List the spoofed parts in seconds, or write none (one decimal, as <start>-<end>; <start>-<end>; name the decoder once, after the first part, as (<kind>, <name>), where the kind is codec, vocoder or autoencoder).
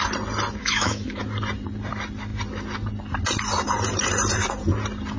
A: 0.6-1.2 (autoencoder, DAC-VAE)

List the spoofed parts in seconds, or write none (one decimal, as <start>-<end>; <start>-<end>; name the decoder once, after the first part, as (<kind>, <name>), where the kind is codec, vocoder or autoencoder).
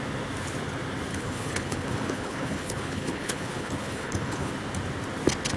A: 1.1-4.5 (codec, HILCodec)